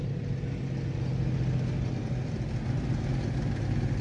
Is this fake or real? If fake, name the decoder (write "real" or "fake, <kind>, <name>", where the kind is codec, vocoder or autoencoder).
real